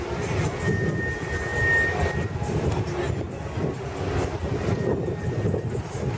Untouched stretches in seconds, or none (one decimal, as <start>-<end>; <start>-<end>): 0.0-6.2